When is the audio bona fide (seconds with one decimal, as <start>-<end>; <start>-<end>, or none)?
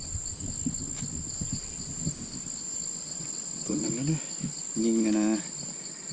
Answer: 0.0-3.1; 3.9-6.1